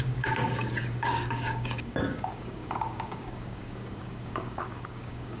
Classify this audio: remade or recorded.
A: remade